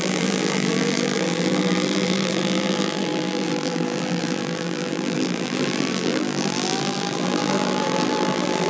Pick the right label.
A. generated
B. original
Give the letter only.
A